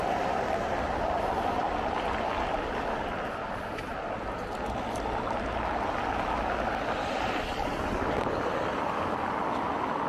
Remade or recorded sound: recorded